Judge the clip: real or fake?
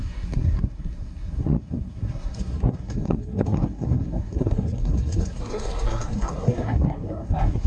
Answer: fake